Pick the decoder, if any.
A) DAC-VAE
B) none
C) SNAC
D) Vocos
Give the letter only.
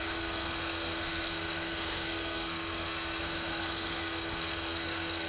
C